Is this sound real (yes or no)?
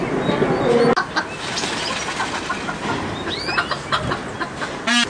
yes